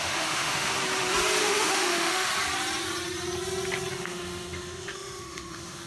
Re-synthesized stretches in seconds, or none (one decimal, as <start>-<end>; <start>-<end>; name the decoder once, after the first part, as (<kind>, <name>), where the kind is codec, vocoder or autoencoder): 0.0-0.7 (autoencoder, DAC-VAE); 1.4-2.3; 3.9-5.9